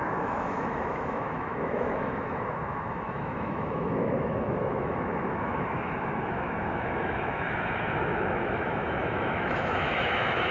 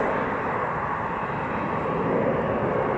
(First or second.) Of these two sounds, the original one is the second